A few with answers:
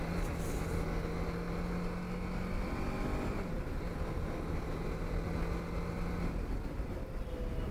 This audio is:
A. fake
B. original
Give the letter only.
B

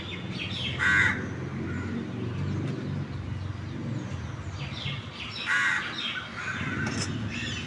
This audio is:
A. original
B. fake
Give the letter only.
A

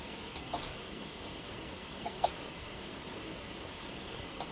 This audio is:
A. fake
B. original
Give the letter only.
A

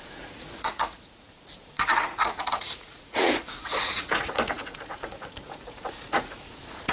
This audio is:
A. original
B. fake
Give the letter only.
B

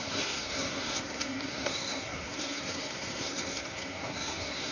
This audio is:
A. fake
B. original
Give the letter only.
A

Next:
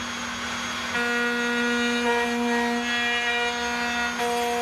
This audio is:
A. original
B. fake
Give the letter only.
A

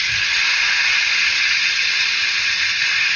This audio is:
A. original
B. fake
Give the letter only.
A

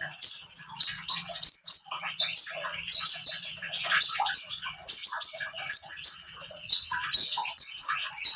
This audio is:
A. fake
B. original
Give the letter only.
A